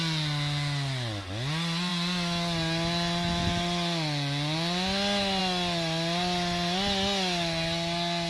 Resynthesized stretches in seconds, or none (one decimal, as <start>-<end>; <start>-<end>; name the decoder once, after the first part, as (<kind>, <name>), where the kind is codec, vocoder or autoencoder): none